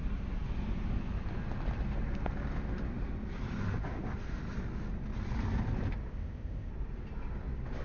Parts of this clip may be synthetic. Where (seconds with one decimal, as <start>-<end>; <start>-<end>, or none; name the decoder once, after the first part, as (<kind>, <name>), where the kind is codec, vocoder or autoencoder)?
6.1-6.7 (codec, ZipCodec)

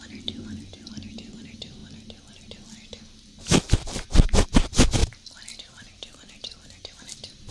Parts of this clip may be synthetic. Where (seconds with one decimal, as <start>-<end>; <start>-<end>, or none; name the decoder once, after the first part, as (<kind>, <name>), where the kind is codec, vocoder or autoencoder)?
0.0-1.8 (vocoder, BigVGAN v2); 3.6-5.0; 5.6-7.5

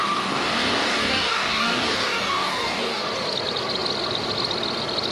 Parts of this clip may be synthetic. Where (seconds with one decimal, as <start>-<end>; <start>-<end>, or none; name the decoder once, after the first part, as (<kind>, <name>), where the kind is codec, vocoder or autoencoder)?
0.0-3.1 (codec, DAC)